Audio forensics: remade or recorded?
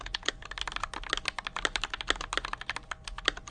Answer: recorded